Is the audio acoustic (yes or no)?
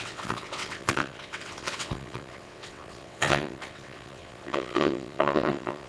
no